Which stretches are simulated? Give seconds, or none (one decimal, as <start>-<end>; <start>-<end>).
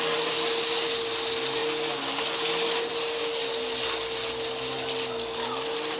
none